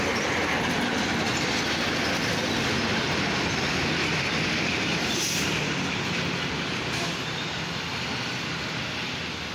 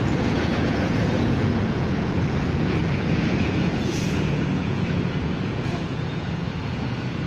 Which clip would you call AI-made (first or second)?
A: second